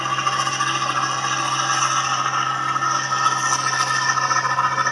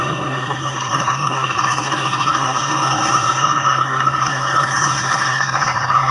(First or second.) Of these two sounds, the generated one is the second